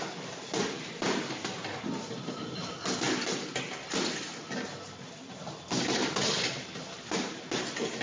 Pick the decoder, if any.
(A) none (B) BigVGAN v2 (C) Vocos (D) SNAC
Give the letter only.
A